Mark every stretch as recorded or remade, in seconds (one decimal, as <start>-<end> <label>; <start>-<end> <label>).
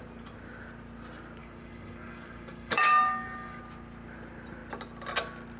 0.0-1.4 recorded; 1.4-3.6 remade; 3.6-5.6 recorded